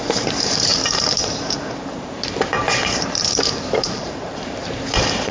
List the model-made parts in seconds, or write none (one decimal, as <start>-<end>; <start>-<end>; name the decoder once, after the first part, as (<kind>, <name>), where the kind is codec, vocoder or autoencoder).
0.0-5.3 (vocoder, BigVGAN v2)